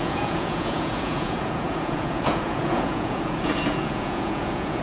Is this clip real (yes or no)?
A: no